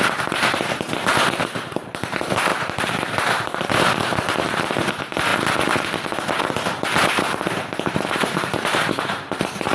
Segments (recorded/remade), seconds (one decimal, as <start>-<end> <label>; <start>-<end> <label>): 0.0-5.3 remade; 5.3-7.0 recorded; 7.0-9.7 remade